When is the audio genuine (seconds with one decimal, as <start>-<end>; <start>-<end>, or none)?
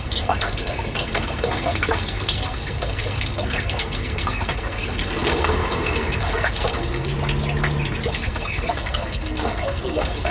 7.1-8.1